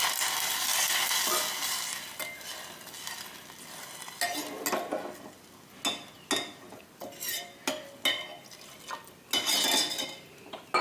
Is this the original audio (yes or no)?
yes